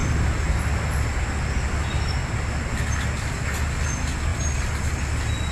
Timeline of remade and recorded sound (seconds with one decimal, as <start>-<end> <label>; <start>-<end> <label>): 0.0-5.5 recorded